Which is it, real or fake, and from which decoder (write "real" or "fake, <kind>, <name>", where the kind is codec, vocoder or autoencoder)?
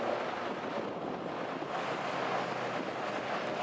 real